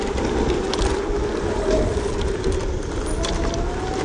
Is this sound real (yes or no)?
yes